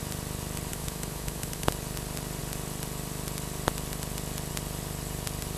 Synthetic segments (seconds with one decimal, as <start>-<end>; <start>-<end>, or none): 0.7-1.7